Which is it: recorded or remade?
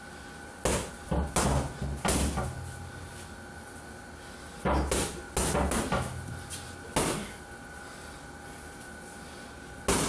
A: recorded